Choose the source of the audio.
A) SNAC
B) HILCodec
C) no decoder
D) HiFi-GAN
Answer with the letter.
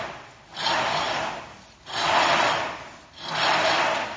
C